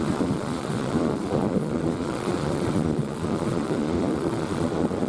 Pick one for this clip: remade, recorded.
remade